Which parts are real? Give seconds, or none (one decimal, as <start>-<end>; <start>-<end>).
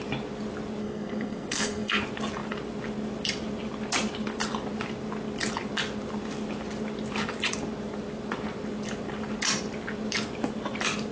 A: 0.0-0.8; 2.0-11.1